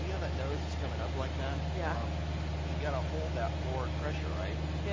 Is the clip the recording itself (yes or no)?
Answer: yes